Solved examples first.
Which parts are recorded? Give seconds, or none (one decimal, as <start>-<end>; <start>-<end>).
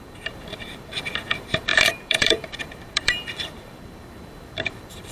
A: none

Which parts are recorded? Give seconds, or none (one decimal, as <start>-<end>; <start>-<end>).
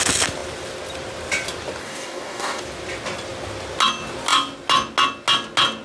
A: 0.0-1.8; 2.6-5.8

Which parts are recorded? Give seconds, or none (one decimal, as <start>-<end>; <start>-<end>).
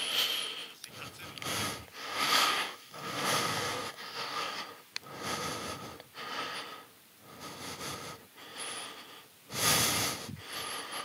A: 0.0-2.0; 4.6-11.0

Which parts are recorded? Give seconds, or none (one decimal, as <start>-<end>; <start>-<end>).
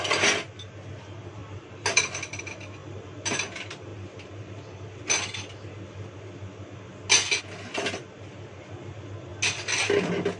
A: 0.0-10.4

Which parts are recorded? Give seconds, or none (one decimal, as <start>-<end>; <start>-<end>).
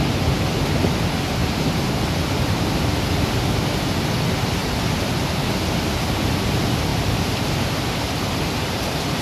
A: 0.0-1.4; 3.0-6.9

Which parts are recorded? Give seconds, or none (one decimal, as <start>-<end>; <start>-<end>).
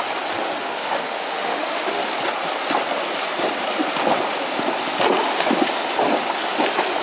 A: 0.0-0.6; 2.0-7.0